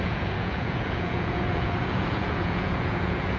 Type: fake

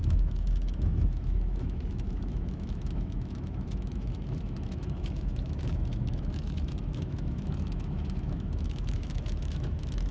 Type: fake